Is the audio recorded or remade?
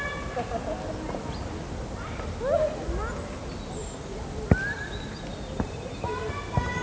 recorded